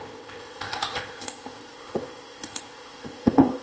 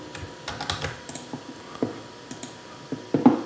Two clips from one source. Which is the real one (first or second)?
second